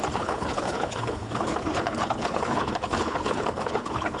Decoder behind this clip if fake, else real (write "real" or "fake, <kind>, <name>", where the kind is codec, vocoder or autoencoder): fake, codec, HILCodec